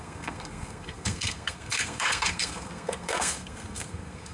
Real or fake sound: fake